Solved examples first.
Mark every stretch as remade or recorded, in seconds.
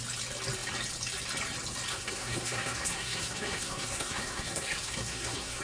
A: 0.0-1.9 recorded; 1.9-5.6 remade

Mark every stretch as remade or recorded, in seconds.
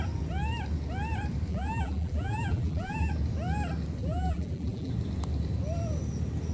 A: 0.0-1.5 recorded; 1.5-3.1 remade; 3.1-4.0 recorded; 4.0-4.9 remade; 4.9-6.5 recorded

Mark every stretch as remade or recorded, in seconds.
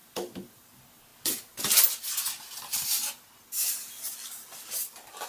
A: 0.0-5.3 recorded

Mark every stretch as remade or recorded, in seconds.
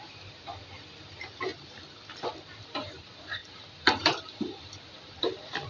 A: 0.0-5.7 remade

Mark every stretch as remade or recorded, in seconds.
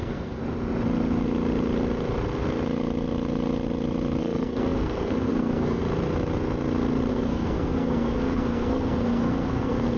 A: 0.0-0.4 remade; 0.4-4.2 recorded; 4.2-5.8 remade; 5.8-7.1 recorded; 7.1-10.0 remade